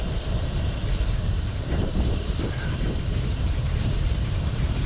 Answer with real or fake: fake